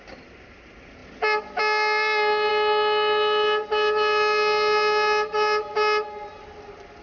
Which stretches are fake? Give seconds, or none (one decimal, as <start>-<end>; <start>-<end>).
none